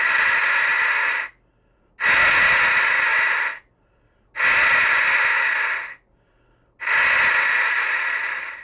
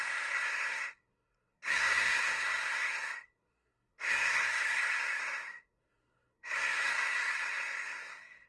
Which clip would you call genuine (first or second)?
first